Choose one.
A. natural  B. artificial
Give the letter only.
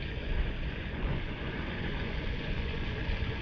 B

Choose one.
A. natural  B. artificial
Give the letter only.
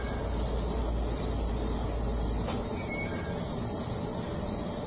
A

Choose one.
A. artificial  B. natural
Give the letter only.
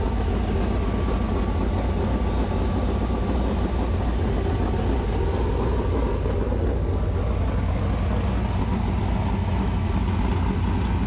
B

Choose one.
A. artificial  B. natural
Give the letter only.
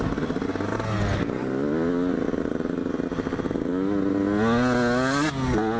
B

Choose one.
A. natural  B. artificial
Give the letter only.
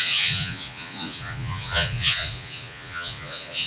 B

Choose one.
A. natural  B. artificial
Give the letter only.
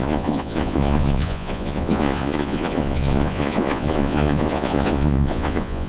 B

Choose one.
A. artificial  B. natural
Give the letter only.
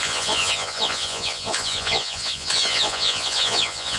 A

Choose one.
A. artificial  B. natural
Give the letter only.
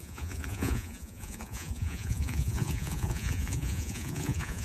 A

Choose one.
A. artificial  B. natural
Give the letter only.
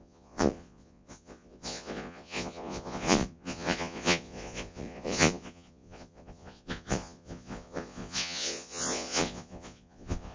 A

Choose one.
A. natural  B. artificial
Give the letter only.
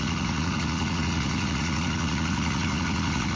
B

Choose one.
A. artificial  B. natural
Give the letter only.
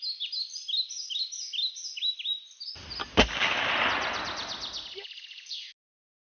B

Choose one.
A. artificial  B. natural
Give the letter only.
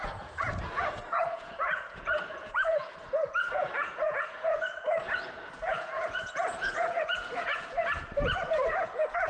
A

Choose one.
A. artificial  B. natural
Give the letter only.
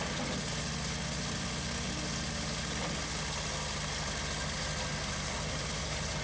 B